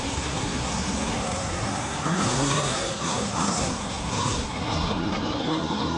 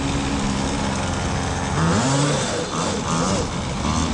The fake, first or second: first